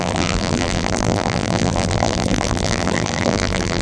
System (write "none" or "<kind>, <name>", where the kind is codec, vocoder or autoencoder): vocoder, BigVGAN v2